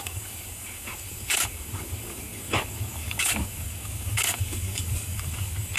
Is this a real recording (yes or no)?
no